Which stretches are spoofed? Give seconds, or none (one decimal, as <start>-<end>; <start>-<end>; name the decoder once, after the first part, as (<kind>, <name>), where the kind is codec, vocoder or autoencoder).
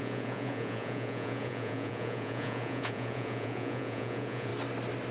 0.0-4.5 (vocoder, Vocos)